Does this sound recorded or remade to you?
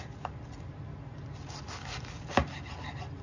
recorded